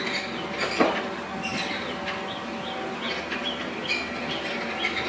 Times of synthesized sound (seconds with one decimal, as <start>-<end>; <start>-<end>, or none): none

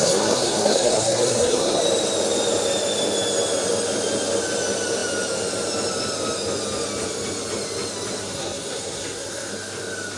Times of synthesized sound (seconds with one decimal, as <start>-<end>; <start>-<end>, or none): 0.0-1.8; 8.2-9.5